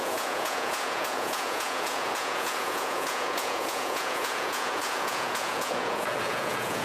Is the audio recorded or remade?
remade